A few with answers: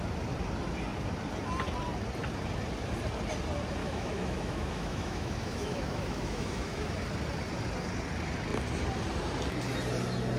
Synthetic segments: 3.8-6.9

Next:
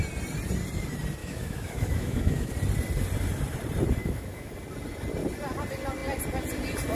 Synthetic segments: 1.2-2.5; 4.0-4.5

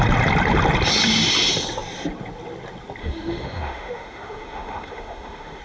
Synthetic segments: 3.0-5.6

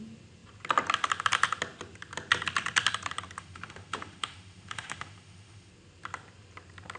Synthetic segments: 3.4-5.7